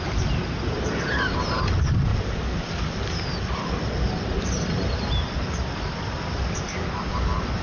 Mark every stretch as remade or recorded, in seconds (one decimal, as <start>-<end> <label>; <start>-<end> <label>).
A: 0.0-7.6 recorded